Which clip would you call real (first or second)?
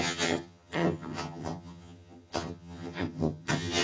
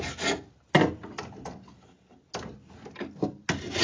second